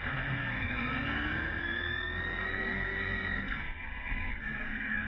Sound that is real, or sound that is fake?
fake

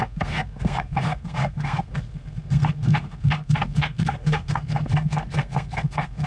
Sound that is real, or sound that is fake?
fake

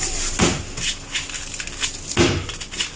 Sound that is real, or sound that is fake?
real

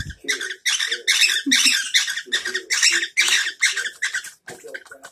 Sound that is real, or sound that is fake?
real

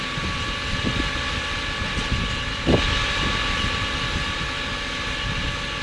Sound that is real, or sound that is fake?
real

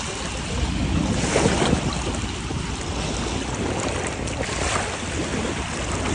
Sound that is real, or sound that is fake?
real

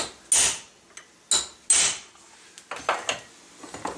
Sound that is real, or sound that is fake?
real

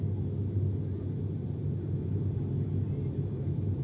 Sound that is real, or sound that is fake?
real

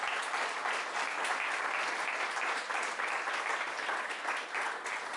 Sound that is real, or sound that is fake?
real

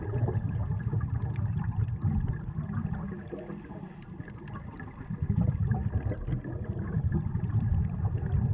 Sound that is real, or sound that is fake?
real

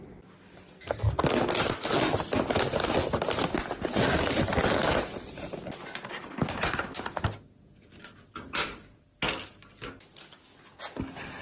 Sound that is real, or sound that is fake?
real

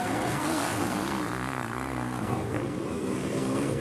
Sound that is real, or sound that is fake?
fake